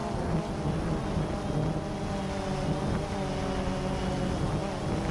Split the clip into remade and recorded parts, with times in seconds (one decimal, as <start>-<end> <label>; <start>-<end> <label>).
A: 0.0-5.1 recorded